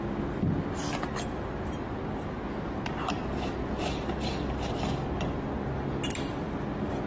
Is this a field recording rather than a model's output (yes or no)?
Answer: yes